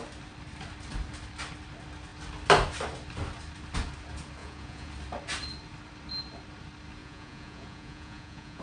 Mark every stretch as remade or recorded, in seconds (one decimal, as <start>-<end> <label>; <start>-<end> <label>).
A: 0.0-4.4 recorded; 4.4-4.9 remade; 4.9-7.0 recorded; 7.0-8.6 remade